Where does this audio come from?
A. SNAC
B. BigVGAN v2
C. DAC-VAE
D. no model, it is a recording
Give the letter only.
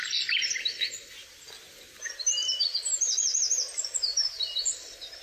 B